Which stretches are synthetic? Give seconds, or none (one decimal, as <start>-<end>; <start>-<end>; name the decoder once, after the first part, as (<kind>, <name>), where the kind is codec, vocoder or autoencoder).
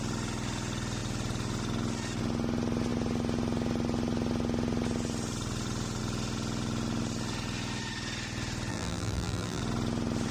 8.7-9.6 (vocoder, BigVGAN v2)